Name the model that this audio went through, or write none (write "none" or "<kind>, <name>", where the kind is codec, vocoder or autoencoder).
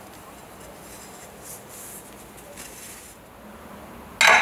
none